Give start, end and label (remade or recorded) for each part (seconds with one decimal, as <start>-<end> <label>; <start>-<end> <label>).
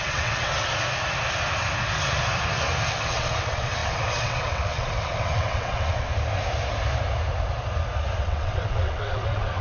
0.0-0.7 remade; 0.7-2.9 recorded; 2.9-6.1 remade; 6.1-8.2 recorded; 8.2-9.6 remade